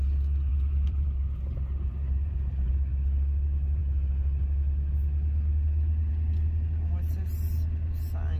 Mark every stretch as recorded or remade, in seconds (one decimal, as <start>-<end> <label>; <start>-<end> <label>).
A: 0.0-0.5 recorded; 0.5-2.7 remade; 2.7-8.4 recorded